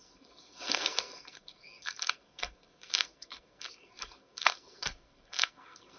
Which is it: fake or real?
fake